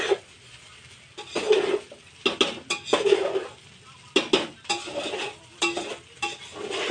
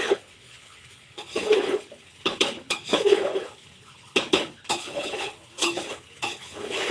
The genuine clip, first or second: first